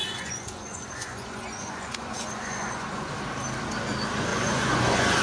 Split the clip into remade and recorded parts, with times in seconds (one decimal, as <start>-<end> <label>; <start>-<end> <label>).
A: 0.0-3.1 remade; 3.1-4.3 recorded; 4.3-5.2 remade